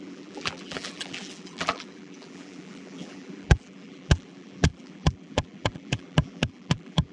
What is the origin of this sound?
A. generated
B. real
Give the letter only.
A